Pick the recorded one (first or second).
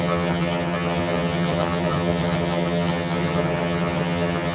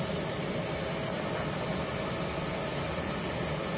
second